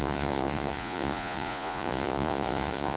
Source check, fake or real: fake